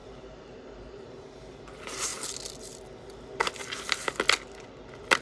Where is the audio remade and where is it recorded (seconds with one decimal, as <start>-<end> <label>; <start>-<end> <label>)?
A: 0.0-2.1 remade; 2.1-5.2 recorded